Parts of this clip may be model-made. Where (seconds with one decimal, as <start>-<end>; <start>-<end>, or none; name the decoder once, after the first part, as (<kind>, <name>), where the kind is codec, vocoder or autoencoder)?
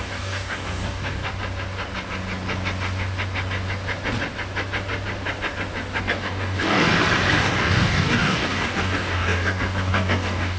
0.0-1.2 (codec, DAC); 6.0-6.9; 7.4-10.6